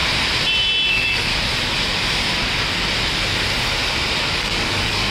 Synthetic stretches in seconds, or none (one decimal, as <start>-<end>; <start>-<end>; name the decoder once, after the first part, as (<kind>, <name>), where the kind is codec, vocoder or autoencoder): 0.9-1.3 (codec, DAC); 4.4-5.1